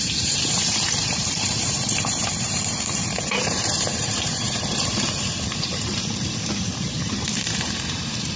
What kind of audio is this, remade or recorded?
remade